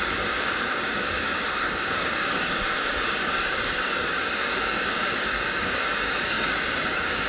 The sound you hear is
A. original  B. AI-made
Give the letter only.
B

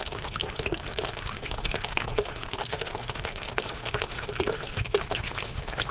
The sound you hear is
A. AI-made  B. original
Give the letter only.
A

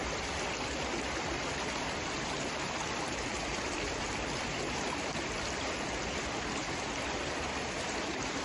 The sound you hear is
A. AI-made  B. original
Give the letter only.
A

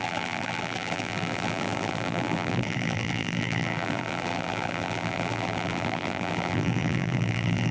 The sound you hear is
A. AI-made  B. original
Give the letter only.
A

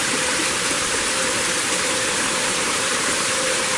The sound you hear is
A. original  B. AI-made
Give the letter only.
B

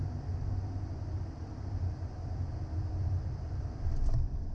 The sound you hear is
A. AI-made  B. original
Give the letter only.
B